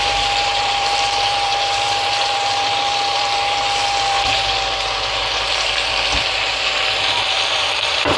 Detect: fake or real fake